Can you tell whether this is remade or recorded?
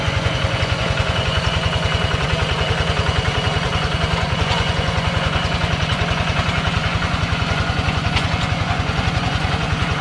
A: remade